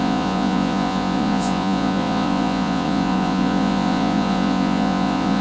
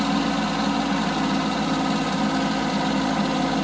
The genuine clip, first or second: second